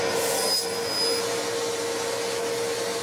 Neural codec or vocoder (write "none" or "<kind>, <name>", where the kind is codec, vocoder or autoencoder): none